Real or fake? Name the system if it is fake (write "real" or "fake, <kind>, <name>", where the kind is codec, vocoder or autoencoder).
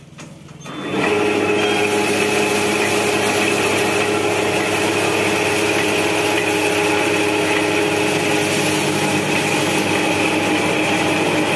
real